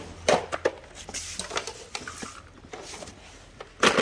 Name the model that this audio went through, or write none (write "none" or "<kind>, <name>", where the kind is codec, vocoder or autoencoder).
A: none